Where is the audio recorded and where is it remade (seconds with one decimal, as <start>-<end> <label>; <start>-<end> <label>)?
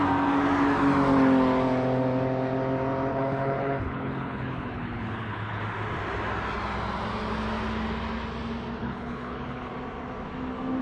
0.0-3.1 recorded; 3.1-5.6 remade; 5.6-8.8 recorded; 8.8-9.7 remade; 9.7-10.8 recorded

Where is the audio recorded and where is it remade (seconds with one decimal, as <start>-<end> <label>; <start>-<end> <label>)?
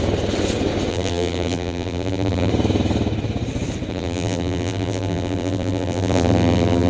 0.0-0.9 recorded; 0.9-2.5 remade; 2.5-3.9 recorded; 3.9-6.9 remade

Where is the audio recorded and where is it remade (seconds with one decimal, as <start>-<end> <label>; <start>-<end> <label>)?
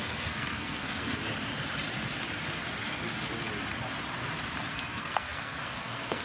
0.0-1.2 remade; 1.2-4.7 recorded; 4.7-6.2 remade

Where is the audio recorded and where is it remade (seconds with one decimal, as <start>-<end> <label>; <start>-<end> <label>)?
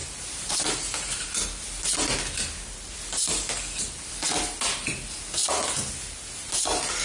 0.0-7.0 recorded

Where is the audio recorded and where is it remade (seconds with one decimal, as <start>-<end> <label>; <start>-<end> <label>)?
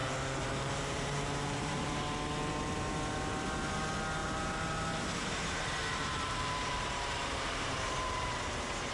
0.0-1.9 remade; 1.9-4.2 recorded; 4.2-8.9 remade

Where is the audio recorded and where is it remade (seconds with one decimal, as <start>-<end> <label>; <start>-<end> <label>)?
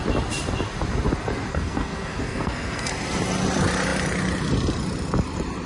0.0-1.5 recorded; 1.5-2.9 remade; 2.9-5.7 recorded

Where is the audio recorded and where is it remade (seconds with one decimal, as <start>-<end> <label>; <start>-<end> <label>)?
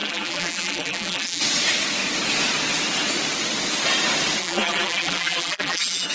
0.0-1.4 remade; 1.4-4.4 recorded; 4.4-6.1 remade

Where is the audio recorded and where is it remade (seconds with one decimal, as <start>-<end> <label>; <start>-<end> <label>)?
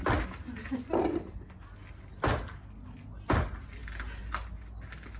0.0-5.2 recorded